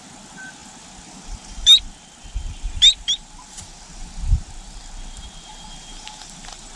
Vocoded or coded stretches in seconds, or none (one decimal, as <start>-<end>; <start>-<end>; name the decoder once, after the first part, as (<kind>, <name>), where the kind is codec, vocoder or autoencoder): none